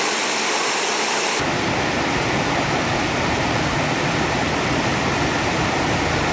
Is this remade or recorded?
recorded